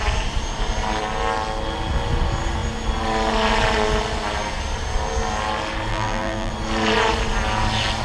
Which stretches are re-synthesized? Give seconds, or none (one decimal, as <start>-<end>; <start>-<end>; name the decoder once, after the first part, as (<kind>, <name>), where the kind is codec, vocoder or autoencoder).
5.9-6.5 (vocoder, BigVGAN v2)